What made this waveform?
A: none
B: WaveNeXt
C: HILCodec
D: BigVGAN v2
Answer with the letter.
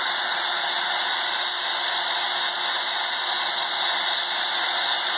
A